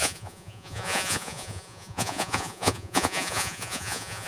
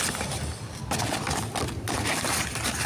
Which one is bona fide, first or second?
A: second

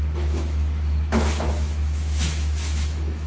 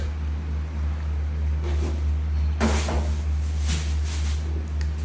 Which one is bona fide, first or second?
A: second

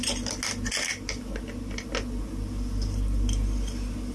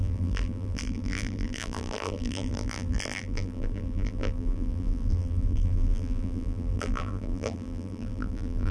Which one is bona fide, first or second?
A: first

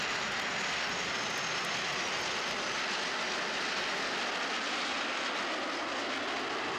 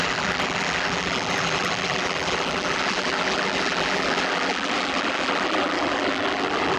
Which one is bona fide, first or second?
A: first